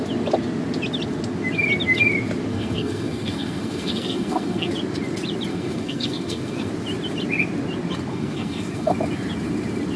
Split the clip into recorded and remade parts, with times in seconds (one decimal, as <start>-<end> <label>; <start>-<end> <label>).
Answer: 0.0-2.5 recorded; 2.5-4.7 remade; 4.7-5.5 recorded; 5.5-6.7 remade; 6.7-8.1 recorded; 8.1-8.9 remade; 8.9-10.0 recorded